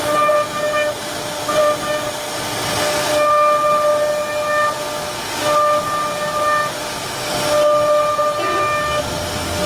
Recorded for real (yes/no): yes